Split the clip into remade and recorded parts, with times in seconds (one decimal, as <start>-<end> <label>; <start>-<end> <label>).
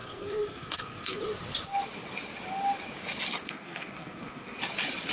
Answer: 0.0-1.2 remade; 1.2-3.4 recorded; 3.4-4.6 remade; 4.6-5.1 recorded